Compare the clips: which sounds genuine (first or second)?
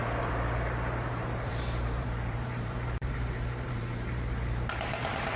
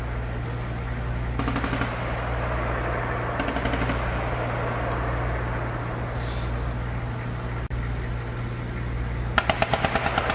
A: second